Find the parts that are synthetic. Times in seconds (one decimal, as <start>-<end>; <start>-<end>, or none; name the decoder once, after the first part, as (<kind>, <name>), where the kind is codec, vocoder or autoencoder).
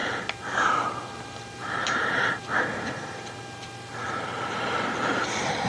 0.0-5.7 (vocoder, BigVGAN v2)